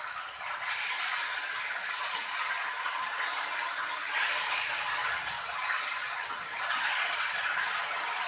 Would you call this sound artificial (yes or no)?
no